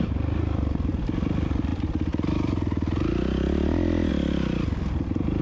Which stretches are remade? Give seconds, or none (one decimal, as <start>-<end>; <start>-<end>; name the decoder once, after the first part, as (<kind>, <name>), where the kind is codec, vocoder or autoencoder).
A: none